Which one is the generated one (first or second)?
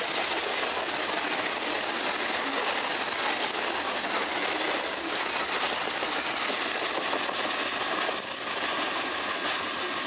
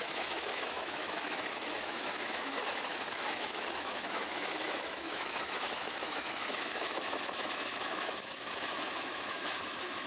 second